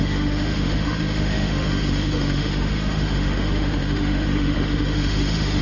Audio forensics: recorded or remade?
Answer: remade